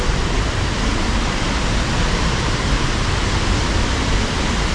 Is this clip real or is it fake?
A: real